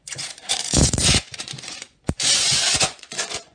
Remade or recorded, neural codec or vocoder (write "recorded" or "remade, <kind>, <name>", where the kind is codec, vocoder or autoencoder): remade, vocoder, Vocos